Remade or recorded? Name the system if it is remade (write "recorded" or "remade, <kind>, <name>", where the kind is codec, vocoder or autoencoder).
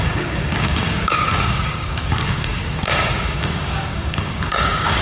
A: remade, codec, DAC